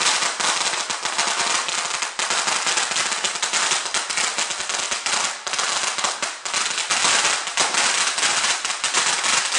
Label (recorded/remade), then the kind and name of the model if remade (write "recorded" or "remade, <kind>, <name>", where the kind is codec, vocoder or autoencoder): recorded